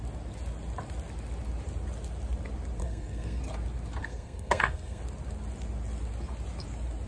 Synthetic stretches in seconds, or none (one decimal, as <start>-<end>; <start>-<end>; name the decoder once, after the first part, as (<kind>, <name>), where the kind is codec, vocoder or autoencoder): 2.8-3.4 (codec, SNAC); 4.0-5.0